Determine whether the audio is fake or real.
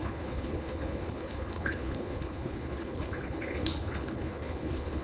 fake